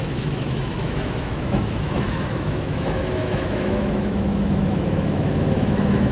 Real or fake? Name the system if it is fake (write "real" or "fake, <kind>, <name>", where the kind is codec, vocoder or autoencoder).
fake, autoencoder, DAC-VAE